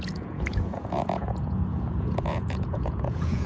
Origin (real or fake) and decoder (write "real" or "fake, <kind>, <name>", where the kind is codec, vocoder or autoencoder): fake, vocoder, Vocos